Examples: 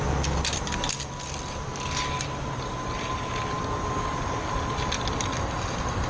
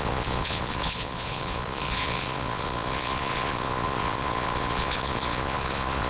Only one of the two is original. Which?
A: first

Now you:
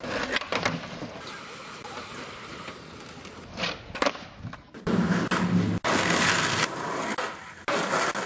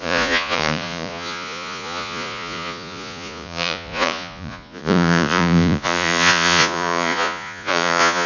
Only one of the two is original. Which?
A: first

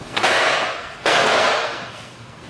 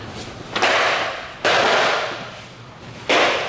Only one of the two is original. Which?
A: second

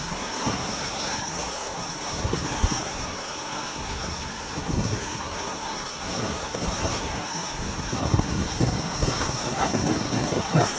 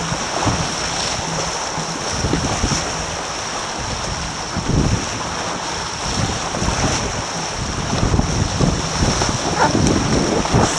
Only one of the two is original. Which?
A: second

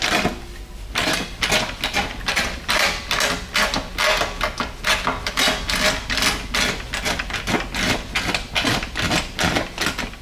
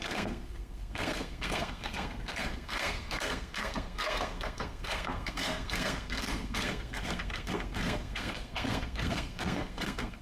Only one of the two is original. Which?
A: first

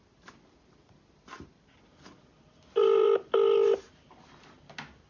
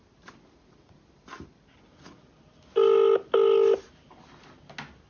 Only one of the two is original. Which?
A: second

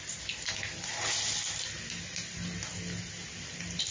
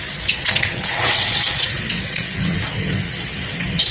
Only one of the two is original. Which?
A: first